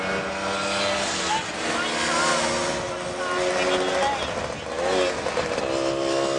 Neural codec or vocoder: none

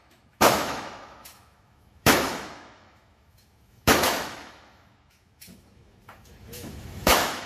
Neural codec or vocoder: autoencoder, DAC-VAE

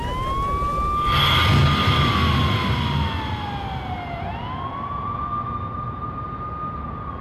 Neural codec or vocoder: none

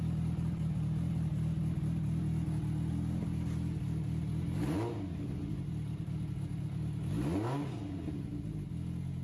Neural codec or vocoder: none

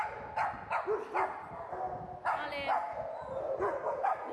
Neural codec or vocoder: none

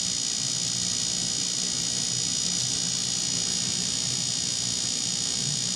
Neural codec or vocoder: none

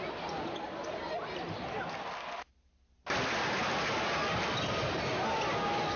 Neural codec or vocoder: vocoder, BigVGAN v2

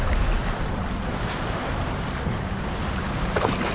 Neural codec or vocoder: none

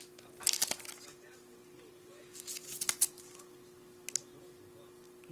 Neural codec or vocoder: none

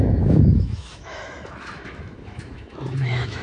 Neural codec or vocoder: autoencoder, DAC-VAE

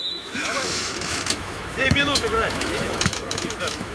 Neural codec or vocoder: autoencoder, DAC-VAE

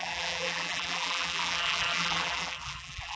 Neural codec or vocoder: vocoder, BigVGAN v2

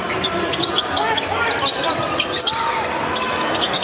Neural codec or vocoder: none